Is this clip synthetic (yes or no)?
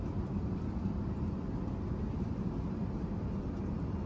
no